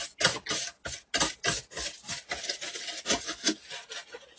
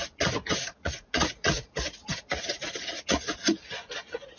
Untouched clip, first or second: first